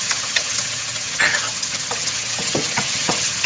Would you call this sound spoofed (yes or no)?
yes